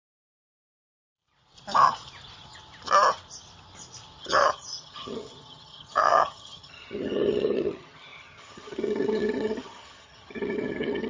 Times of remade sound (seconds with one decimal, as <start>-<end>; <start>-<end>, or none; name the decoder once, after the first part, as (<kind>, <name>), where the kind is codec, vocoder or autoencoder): 4.2-11.1 (vocoder, HiFi-GAN)